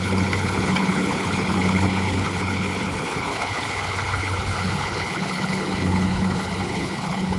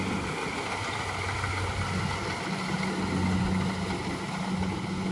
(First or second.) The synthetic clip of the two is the first